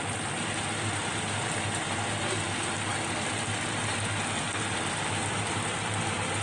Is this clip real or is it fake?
real